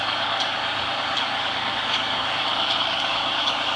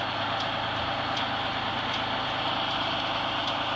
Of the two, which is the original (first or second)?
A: second